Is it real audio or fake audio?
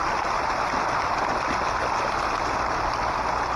real